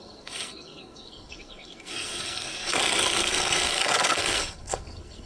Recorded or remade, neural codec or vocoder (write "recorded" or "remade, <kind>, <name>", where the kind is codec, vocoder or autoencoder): remade, codec, SNAC